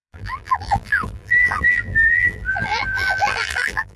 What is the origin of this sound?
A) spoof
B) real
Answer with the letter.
A